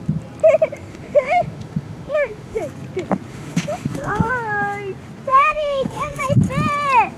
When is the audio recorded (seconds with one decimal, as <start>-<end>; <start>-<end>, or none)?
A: 0.0-0.9; 2.6-3.3; 4.3-5.3; 6.3-7.2